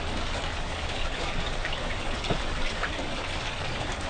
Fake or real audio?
fake